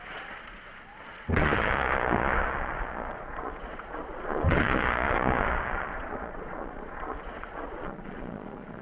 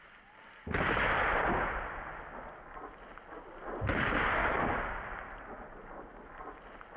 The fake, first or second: first